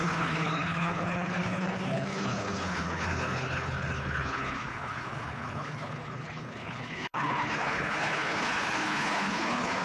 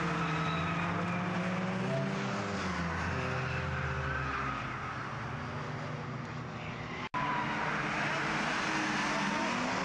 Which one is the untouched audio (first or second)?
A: second